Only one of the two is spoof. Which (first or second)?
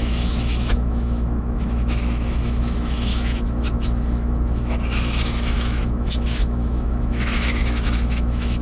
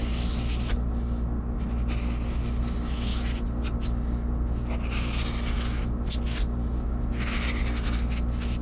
first